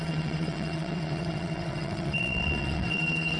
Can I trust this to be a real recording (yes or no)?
no